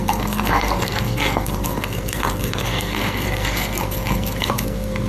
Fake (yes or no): yes